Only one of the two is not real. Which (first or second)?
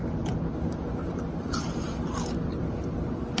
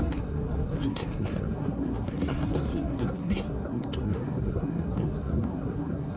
second